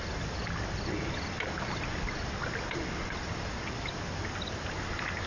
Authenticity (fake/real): real